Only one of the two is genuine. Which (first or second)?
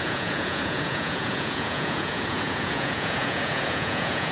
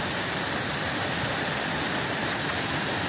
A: second